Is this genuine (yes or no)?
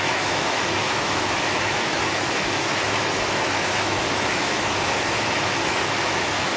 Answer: no